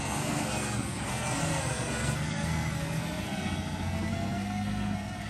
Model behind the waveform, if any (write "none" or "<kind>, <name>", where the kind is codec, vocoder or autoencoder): codec, SNAC